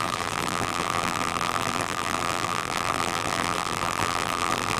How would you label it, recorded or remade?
remade